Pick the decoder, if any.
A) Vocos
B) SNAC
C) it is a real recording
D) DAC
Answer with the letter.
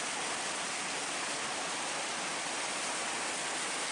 C